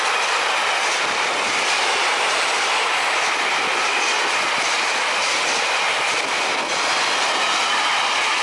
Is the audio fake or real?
real